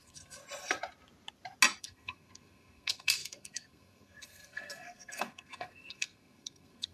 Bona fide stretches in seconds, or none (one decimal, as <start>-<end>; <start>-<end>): 0.4-1.8